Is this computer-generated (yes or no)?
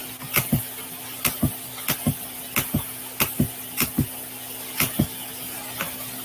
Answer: no